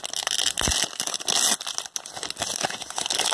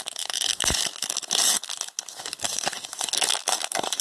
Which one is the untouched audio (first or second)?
first